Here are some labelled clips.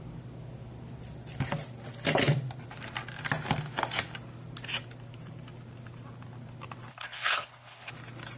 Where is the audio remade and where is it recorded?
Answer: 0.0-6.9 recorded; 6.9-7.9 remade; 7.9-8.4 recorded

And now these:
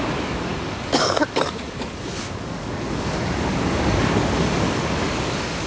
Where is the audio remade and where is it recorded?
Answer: 0.0-5.7 remade

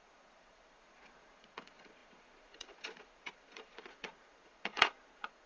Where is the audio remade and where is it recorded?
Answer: 0.0-5.5 remade

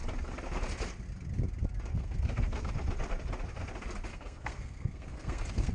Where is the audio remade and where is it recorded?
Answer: 0.0-1.9 recorded; 1.9-2.7 remade; 2.7-4.1 recorded; 4.1-5.7 remade

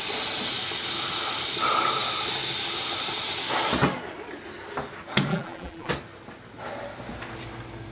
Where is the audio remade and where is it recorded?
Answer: 0.0-5.3 recorded; 5.3-5.9 remade; 5.9-7.9 recorded

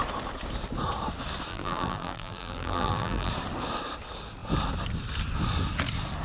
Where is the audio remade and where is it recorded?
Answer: 0.0-1.5 recorded; 1.5-3.3 remade; 3.3-6.2 recorded

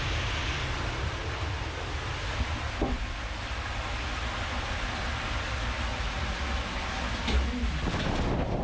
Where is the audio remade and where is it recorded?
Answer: 0.0-5.9 recorded; 5.9-6.4 remade; 6.4-8.6 recorded